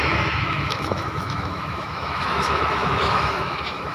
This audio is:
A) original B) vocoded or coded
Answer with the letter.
B